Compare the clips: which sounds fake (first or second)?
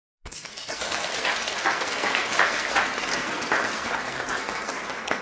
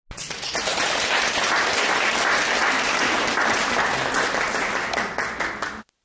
first